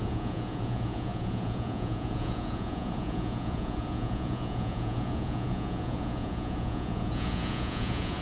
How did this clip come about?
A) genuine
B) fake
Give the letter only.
B